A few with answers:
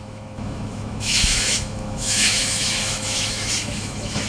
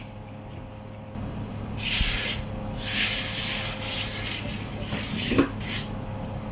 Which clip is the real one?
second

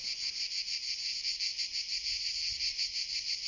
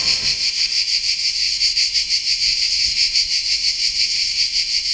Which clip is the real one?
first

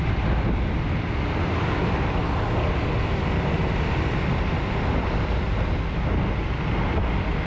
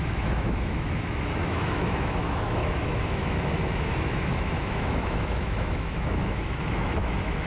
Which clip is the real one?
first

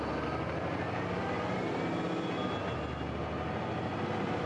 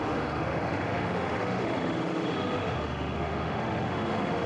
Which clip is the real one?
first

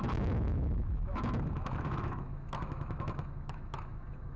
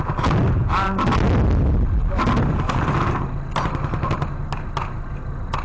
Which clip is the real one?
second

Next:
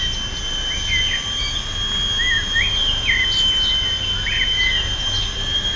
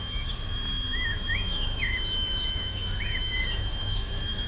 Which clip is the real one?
first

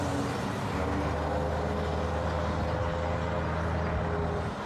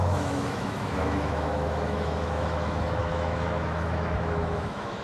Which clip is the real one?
first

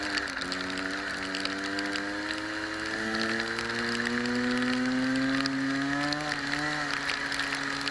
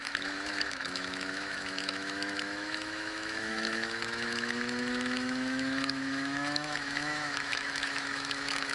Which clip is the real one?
first